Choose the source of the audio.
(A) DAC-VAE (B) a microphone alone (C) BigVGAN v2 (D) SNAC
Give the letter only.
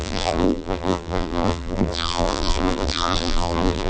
C